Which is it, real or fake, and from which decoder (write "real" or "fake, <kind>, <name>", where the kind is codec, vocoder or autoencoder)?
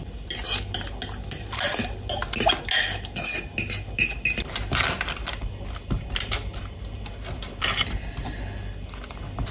real